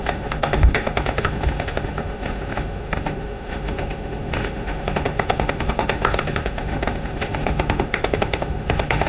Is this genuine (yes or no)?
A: no